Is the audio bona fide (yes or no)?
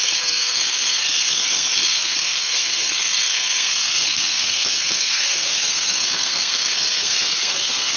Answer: no